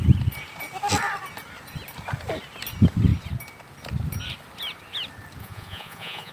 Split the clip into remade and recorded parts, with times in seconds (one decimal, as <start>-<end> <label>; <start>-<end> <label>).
0.0-5.4 recorded; 5.4-6.3 remade